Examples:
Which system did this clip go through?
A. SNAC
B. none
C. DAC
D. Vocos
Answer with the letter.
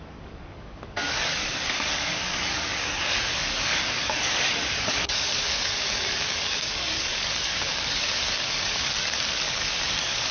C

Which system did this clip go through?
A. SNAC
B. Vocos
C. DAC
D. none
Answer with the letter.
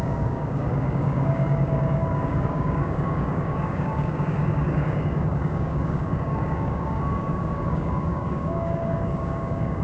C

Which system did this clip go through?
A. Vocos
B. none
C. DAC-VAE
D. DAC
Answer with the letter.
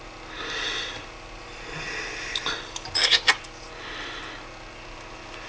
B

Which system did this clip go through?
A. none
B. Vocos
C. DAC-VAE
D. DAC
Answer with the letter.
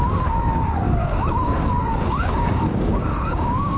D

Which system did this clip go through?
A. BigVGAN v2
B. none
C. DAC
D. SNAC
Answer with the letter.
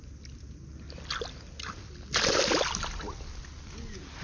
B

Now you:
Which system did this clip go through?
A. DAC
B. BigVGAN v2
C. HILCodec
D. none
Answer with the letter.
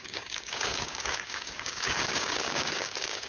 A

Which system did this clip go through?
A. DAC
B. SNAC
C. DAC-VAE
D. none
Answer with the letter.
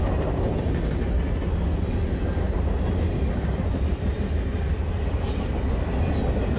D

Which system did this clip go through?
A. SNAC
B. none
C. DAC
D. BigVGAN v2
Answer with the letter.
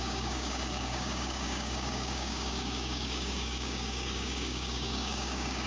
C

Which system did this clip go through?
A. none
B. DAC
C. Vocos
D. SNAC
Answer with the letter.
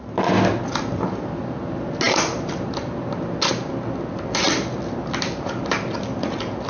A